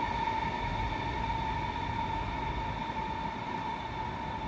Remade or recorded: recorded